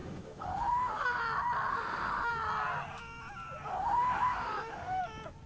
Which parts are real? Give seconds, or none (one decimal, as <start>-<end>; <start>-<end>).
1.2-1.7; 2.3-3.8; 5.0-5.5